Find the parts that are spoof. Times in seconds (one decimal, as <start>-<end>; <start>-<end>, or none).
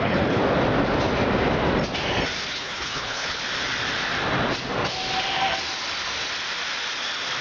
0.0-0.4; 2.5-3.4